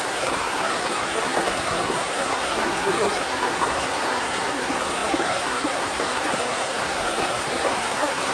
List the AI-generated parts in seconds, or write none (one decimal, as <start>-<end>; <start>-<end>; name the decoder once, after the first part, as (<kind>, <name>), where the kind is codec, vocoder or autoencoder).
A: 0.0-8.3 (codec, SNAC)